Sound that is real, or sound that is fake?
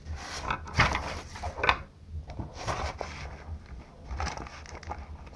real